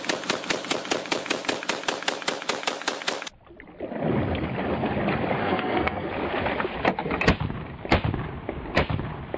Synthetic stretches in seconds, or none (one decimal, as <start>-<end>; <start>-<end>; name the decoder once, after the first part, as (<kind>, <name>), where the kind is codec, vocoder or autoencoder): 5.4-6.1 (codec, SNAC)